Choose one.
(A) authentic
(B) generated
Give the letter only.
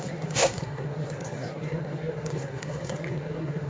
B